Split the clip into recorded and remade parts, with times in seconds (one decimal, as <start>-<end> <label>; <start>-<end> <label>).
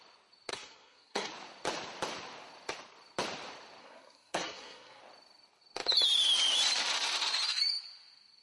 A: 0.0-0.5 recorded; 0.5-1.3 remade; 1.3-3.8 recorded; 3.8-5.0 remade; 5.0-8.4 recorded